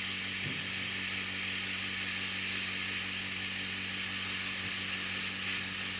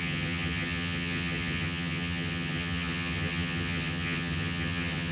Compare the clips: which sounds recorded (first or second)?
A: first